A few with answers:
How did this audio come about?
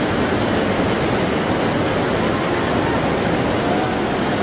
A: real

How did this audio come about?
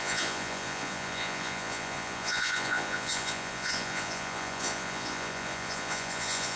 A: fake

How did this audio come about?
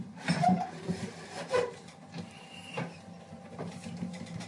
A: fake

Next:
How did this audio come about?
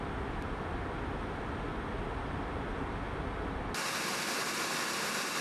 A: real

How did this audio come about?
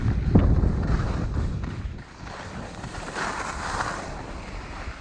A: real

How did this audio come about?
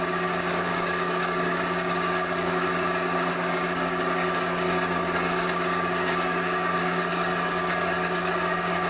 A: fake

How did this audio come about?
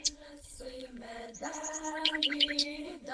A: fake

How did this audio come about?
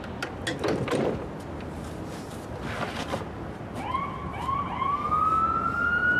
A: real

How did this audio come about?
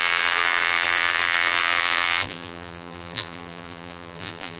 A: fake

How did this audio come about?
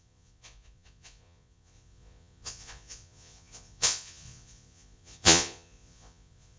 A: fake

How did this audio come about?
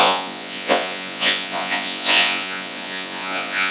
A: fake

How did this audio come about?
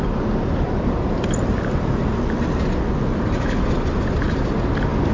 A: real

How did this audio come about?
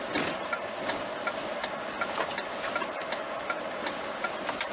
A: real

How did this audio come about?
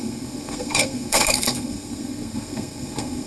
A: fake